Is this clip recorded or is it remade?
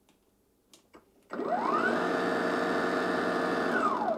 recorded